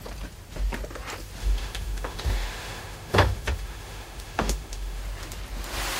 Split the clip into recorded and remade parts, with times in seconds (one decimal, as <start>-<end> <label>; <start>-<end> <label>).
0.0-1.4 recorded; 1.4-5.0 remade; 5.0-6.0 recorded